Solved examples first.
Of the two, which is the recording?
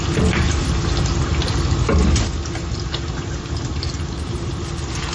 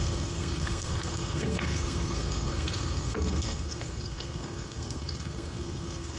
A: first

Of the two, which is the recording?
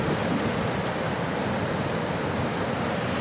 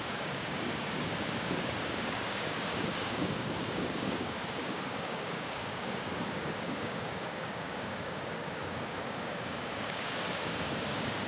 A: first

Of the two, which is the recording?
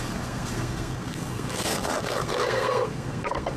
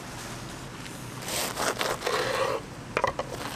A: second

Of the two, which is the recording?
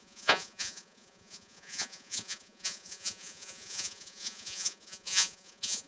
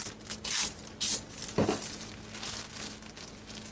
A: second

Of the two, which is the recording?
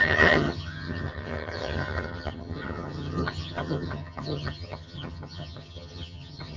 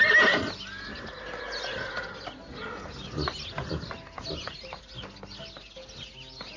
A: second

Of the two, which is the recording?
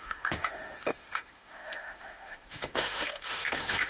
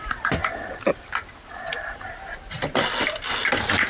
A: second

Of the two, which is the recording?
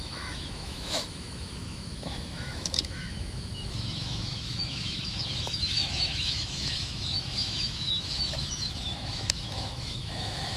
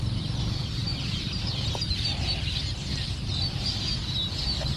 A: second